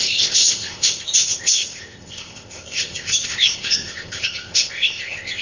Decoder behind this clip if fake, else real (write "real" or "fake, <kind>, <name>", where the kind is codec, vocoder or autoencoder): fake, codec, ZipCodec